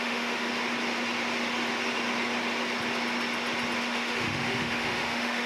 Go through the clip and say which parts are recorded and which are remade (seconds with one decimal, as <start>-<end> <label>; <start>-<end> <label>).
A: 0.0-0.5 remade; 0.5-3.8 recorded; 3.8-5.5 remade